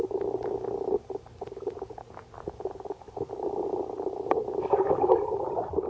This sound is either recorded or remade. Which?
recorded